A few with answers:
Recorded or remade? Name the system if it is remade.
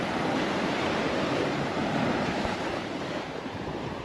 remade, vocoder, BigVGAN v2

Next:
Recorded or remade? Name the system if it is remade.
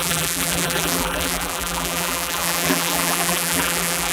remade, vocoder, BigVGAN v2